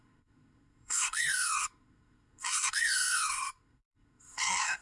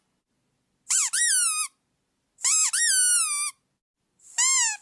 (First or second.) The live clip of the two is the second